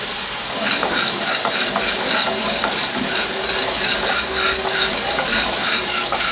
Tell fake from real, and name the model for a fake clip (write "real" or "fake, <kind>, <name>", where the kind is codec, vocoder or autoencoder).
fake, codec, DAC